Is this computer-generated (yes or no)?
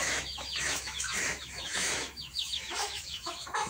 yes